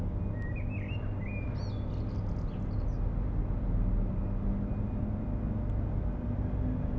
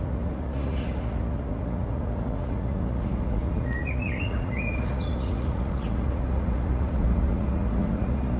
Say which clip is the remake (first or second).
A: second